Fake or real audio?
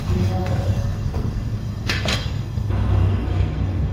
fake